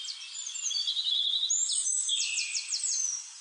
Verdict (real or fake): real